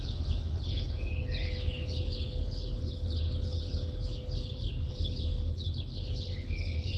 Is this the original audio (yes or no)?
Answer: no